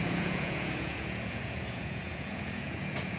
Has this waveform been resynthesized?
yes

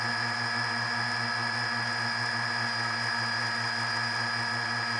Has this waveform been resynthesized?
no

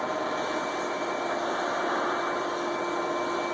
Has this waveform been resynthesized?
no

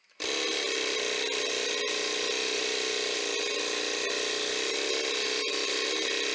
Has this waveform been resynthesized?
no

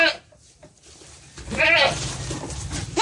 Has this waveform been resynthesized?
no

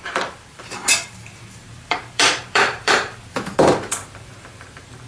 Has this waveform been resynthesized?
yes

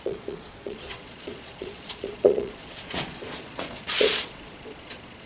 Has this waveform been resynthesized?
yes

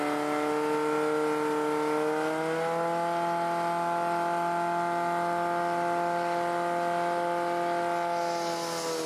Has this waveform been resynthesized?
no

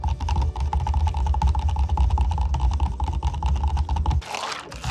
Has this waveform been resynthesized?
no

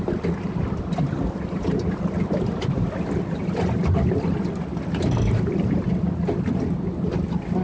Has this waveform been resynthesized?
no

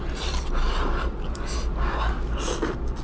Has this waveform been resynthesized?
no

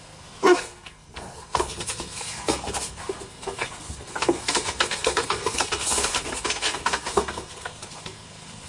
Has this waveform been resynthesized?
yes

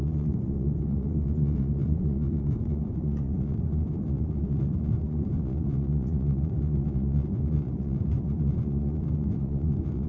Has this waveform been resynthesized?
yes